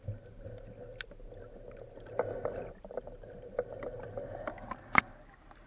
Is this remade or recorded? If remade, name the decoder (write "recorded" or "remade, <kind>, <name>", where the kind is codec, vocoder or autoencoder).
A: recorded